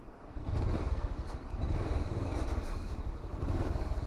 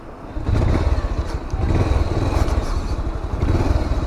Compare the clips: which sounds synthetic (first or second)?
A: first